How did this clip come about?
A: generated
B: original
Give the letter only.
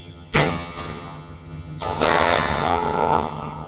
A